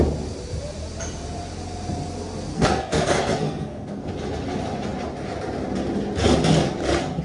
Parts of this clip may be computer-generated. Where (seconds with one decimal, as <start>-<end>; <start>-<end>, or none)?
2.5-4.1